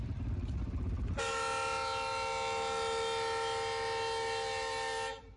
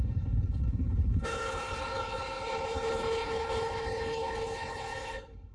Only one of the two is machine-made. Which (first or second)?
second